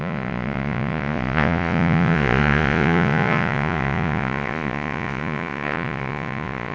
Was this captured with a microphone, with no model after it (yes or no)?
no